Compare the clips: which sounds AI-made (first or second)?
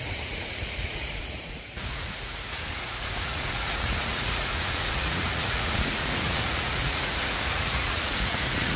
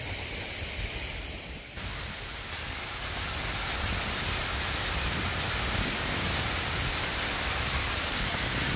first